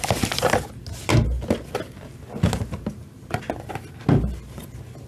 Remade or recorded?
recorded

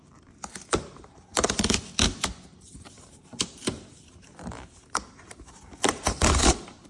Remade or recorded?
remade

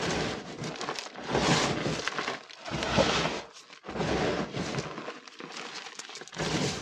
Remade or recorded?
recorded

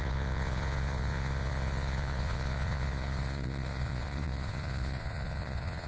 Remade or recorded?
remade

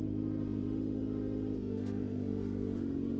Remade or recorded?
remade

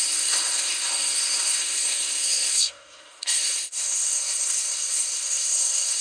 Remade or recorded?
remade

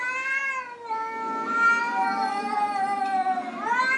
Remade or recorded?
recorded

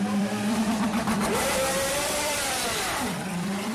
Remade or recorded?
remade